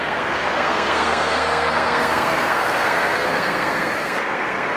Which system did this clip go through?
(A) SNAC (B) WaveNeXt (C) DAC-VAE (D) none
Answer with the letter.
A